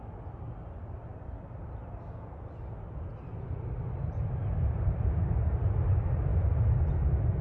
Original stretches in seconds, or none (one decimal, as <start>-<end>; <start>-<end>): 0.0-7.4

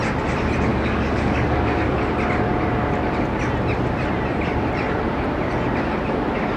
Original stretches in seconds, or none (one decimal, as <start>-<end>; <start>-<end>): 0.0-0.7; 2.0-6.6

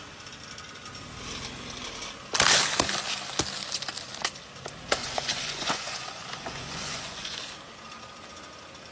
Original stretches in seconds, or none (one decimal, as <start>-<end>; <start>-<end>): 0.0-5.0; 7.4-8.9

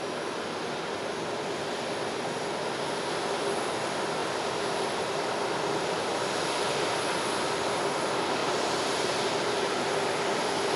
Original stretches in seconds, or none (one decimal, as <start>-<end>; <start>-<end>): 0.0-8.4; 9.2-10.8

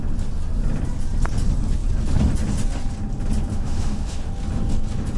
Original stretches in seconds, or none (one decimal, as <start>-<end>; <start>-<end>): 0.0-3.5; 4.3-5.2

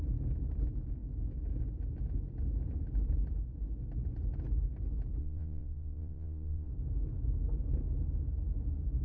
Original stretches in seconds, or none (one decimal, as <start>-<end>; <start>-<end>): 0.0-5.2; 6.7-9.0